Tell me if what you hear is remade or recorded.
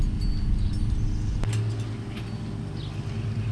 recorded